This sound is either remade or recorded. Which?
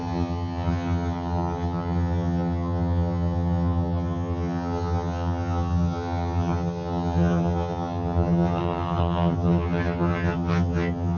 remade